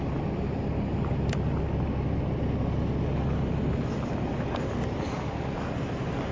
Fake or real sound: real